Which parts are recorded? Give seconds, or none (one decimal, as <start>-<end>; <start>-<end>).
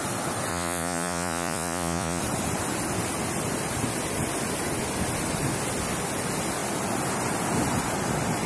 0.0-0.5; 2.2-8.5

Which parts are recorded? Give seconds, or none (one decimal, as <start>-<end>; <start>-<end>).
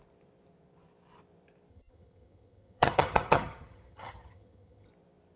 0.0-1.7; 4.9-5.4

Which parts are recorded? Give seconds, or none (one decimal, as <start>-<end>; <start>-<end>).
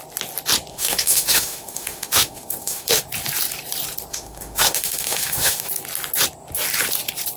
0.0-0.7; 3.0-4.1; 5.7-7.4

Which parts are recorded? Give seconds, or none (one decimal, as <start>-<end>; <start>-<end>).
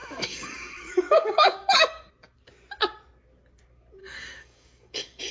2.1-4.0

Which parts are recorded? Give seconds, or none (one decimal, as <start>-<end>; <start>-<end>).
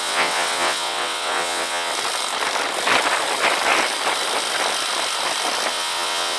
1.9-5.7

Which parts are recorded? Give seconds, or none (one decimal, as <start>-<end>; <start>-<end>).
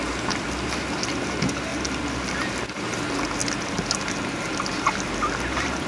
0.0-5.9